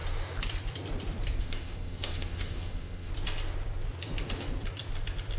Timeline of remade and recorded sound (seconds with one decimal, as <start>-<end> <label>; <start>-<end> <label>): 0.0-1.4 recorded; 1.4-3.1 remade; 3.1-5.4 recorded